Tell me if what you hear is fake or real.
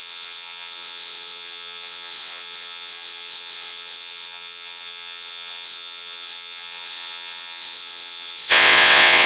fake